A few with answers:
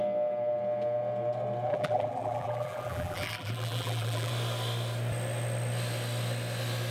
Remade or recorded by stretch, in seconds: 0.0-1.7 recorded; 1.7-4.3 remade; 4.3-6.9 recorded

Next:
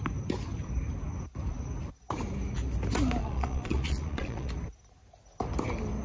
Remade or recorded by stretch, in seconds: 0.0-3.2 recorded; 3.2-4.5 remade; 4.5-6.0 recorded

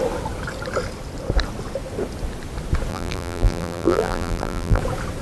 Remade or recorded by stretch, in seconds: 0.0-2.9 recorded; 2.9-4.8 remade; 4.8-5.2 recorded

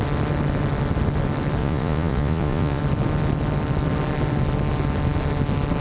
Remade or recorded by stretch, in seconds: 0.0-1.6 recorded; 1.6-2.8 remade; 2.8-5.8 recorded

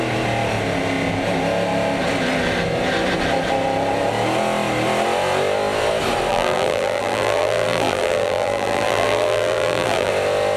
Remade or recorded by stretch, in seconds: 0.0-6.3 recorded; 6.3-10.1 remade; 10.1-10.6 recorded

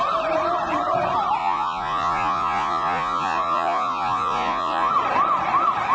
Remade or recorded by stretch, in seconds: 0.0-1.4 recorded; 1.4-4.9 remade; 4.9-5.9 recorded

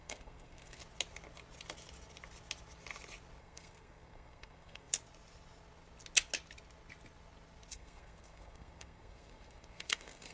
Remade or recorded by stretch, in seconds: 0.0-0.8 remade; 0.8-3.4 recorded; 3.4-4.9 remade; 4.9-7.7 recorded; 7.7-10.3 remade